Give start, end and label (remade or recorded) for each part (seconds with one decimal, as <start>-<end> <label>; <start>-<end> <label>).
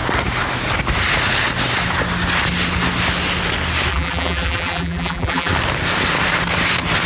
0.0-3.9 recorded; 3.9-5.5 remade; 5.5-7.1 recorded